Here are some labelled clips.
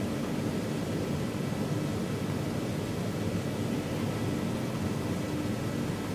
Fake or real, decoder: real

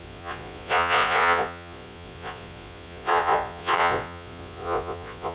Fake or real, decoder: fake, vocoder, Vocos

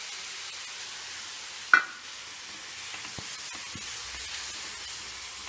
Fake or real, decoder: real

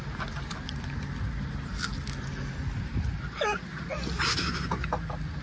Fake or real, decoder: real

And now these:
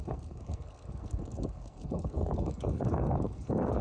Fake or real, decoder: fake, codec, SNAC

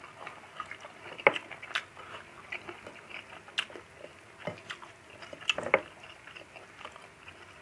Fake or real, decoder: real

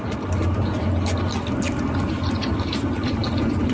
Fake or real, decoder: real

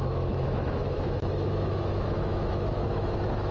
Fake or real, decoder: fake, autoencoder, DAC-VAE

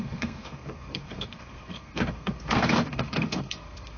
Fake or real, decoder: fake, codec, SNAC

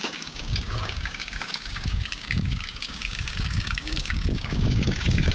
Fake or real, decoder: fake, codec, DAC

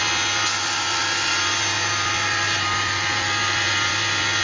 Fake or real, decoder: real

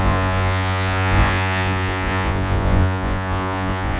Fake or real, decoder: fake, vocoder, Vocos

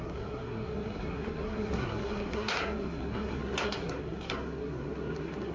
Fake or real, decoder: fake, codec, SNAC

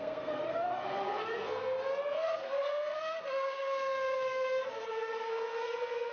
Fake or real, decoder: fake, codec, SNAC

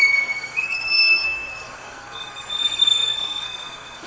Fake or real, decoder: fake, codec, SNAC